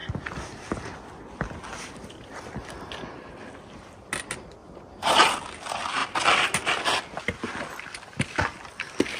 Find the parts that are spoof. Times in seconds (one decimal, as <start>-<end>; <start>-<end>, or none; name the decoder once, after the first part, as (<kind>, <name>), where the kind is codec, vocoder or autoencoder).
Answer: 4.6-5.3 (vocoder, BigVGAN v2)